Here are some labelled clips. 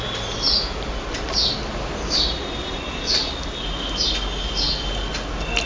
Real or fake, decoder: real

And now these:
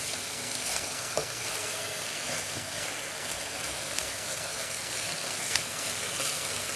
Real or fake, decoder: fake, codec, SNAC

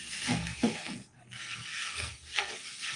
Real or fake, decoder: fake, codec, SNAC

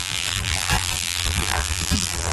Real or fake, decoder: fake, vocoder, BigVGAN v2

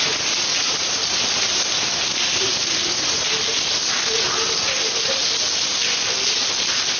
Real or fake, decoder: real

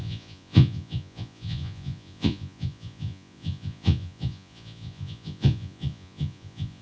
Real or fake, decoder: fake, vocoder, Vocos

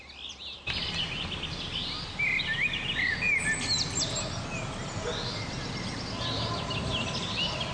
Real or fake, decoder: real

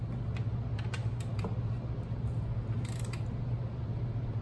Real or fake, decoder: real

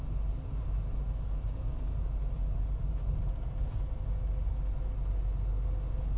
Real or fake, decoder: real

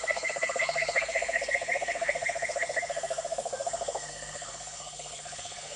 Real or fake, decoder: fake, codec, SNAC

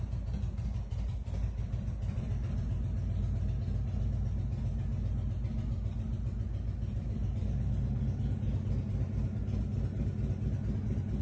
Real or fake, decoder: real